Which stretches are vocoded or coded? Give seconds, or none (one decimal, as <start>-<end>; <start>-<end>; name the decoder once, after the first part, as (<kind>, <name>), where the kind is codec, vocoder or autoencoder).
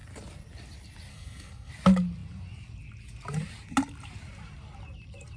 1.1-1.7 (codec, SNAC)